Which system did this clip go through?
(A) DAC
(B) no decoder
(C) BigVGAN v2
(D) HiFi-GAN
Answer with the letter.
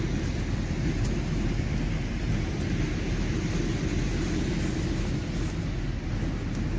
B